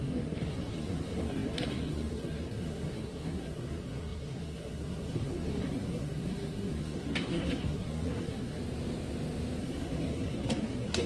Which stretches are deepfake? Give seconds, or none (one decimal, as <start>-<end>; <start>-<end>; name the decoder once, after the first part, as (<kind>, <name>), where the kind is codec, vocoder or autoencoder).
0.0-8.6 (codec, SNAC); 9.6-11.1